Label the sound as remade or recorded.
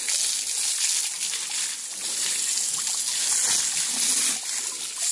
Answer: recorded